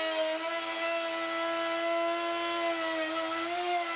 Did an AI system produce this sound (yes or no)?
no